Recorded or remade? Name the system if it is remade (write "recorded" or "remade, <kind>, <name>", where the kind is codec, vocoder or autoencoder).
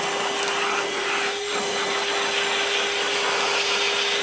recorded